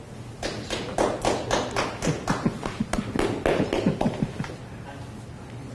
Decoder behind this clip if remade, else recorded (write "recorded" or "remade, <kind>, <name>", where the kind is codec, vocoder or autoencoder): recorded